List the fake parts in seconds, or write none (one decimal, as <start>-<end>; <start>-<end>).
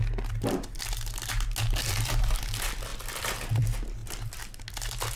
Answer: none